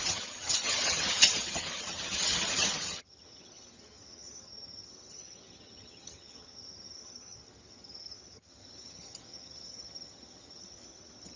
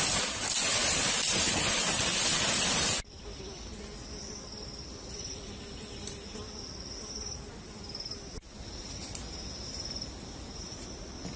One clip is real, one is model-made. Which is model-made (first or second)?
first